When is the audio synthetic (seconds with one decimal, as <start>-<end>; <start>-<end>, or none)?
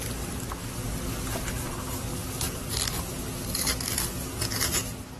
none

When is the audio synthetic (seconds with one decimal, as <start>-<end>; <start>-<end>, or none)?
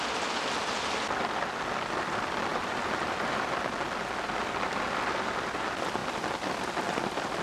none